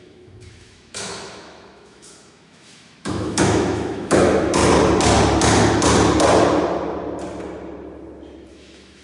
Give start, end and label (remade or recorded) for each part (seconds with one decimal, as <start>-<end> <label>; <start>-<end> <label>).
0.0-4.6 remade; 4.6-8.5 recorded; 8.5-9.0 remade